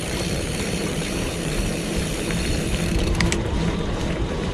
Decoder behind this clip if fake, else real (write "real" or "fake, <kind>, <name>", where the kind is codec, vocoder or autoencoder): fake, vocoder, BigVGAN v2